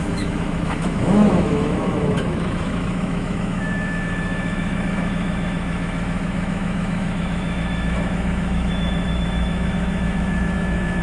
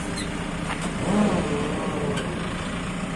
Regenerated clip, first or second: first